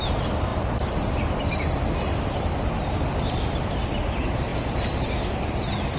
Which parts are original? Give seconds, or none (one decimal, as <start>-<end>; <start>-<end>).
0.0-6.0